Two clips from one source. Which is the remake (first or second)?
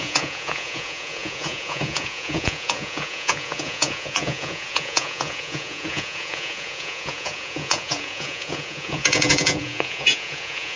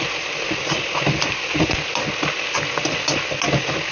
first